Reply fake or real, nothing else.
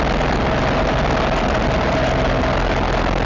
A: real